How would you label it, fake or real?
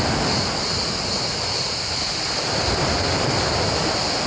real